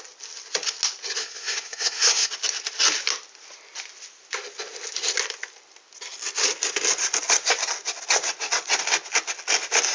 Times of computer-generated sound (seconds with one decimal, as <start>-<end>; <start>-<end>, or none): 1.2-2.3